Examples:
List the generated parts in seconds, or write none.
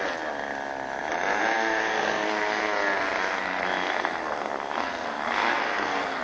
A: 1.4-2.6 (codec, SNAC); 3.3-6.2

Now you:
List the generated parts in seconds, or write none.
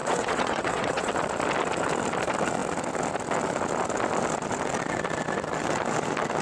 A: 0.0-1.1 (vocoder, WaveNeXt)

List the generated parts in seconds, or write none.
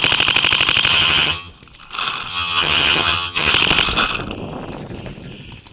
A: 0.9-1.5 (vocoder, HiFi-GAN); 2.3-3.5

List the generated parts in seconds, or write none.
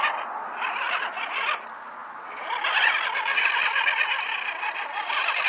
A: none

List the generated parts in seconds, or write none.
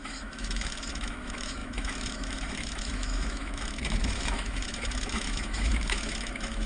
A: 0.0-6.7 (autoencoder, DAC-VAE)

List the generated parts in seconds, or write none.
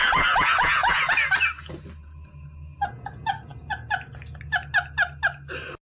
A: 0.0-1.1 (vocoder, Vocos)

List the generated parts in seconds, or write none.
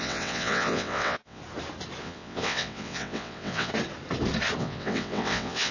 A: 0.0-1.4 (vocoder, WaveNeXt); 2.0-3.7; 4.6-5.7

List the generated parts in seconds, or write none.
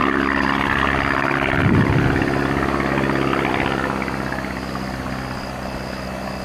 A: none